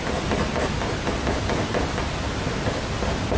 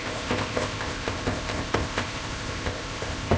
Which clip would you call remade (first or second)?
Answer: second